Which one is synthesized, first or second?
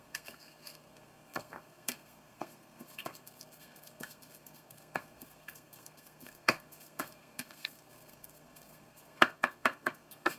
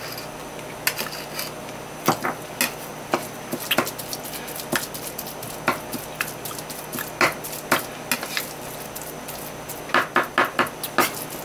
first